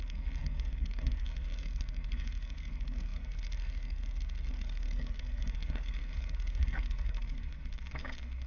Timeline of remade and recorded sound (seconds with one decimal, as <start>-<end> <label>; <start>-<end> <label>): 0.0-8.5 remade